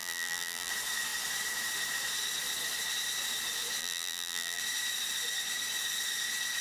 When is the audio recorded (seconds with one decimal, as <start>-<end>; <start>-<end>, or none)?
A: 0.7-3.8; 4.6-6.6